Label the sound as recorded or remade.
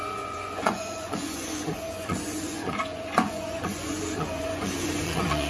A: remade